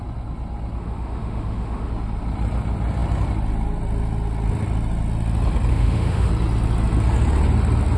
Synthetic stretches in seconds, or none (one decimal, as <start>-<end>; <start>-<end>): 0.8-1.9; 5.7-6.3